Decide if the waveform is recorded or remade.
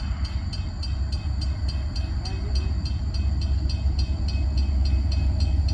recorded